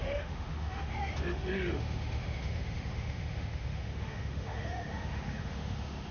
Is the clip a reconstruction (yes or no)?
yes